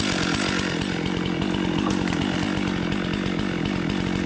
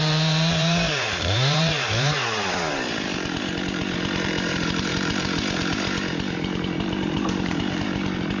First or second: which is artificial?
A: second